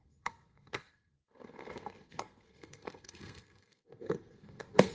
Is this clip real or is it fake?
fake